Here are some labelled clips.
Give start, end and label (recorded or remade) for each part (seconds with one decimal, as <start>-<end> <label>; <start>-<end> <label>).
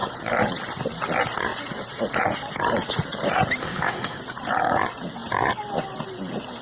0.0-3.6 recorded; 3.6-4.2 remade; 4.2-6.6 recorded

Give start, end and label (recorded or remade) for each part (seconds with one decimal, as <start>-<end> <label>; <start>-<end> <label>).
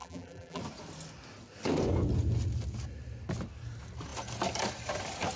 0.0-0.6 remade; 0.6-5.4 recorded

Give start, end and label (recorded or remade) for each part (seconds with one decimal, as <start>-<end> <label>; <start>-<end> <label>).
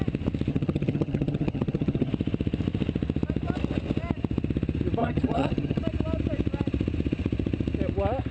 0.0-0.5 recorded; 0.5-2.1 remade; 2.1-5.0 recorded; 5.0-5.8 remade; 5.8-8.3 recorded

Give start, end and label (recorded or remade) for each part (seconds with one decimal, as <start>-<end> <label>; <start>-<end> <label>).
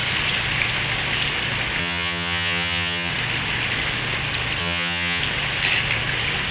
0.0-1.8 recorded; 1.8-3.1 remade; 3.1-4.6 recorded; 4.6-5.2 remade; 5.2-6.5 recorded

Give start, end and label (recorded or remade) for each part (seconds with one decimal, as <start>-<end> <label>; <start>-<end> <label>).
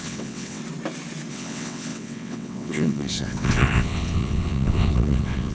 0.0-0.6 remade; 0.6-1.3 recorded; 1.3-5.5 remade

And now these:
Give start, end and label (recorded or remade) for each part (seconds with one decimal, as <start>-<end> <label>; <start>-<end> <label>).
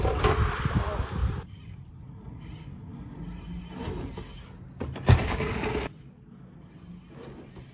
0.0-1.2 recorded; 1.2-1.9 remade; 1.9-7.7 recorded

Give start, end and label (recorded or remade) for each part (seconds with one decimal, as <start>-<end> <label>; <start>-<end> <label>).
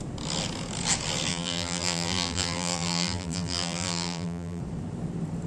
0.0-1.3 recorded; 1.3-4.6 remade; 4.6-5.5 recorded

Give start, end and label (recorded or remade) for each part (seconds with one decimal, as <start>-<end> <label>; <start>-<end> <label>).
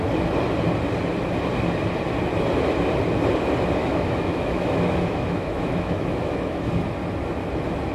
0.0-3.8 recorded; 3.8-6.7 remade; 6.7-7.9 recorded